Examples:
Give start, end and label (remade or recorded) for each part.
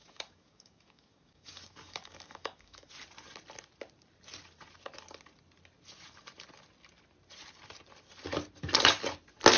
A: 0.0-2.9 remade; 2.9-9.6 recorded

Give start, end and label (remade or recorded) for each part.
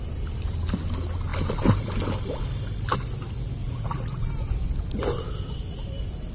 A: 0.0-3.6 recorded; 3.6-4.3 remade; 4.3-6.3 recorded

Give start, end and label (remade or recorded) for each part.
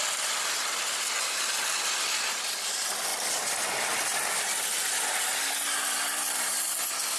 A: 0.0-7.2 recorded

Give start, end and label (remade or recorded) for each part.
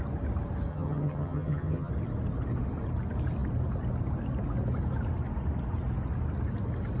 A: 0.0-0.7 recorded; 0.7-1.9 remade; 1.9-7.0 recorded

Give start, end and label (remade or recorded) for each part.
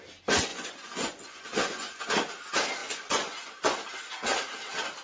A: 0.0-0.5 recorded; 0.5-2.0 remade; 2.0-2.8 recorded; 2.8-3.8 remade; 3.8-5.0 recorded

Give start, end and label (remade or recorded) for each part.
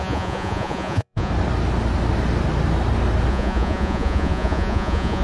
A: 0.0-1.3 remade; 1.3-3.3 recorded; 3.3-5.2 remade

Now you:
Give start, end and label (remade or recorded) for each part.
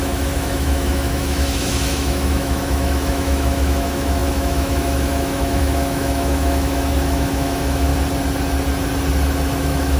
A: 0.0-7.9 remade; 7.9-9.6 recorded; 9.6-10.0 remade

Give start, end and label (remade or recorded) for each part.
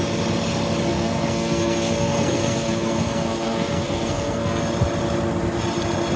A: 0.0-0.9 recorded; 0.9-4.6 remade; 4.6-6.2 recorded